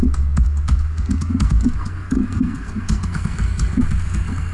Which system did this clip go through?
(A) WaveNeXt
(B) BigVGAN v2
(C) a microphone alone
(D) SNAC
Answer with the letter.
D